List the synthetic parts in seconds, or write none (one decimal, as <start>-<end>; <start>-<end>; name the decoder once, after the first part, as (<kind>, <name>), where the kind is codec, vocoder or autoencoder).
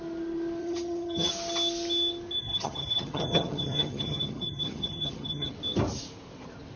0.6-1.3 (vocoder, HiFi-GAN); 2.4-5.5